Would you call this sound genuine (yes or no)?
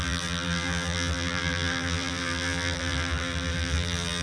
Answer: no